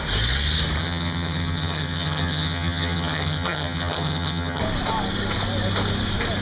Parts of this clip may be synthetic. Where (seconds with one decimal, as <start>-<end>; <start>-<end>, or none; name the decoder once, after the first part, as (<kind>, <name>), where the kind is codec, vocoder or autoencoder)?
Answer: 0.8-4.6 (vocoder, HiFi-GAN)